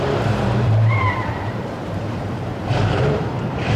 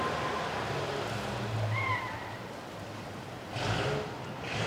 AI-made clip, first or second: first